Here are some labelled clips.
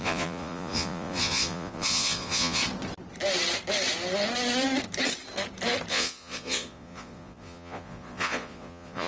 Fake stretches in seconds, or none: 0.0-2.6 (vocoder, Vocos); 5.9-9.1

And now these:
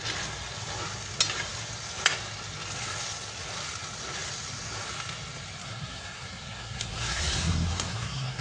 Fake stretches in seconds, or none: 5.6-8.4 (codec, SNAC)

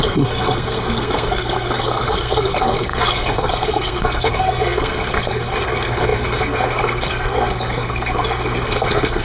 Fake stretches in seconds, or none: 0.0-9.2 (codec, SNAC)

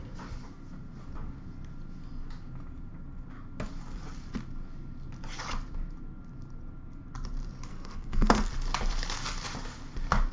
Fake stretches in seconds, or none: 7.7-8.5 (codec, SNAC)

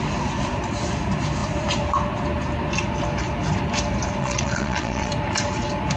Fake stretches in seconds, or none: 4.2-5.1 (vocoder, WaveNeXt)

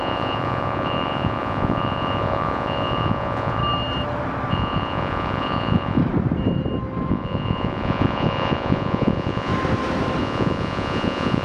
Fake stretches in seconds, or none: 0.0-3.6 (vocoder, Vocos); 4.5-6.0; 7.1-9.5; 10.2-11.4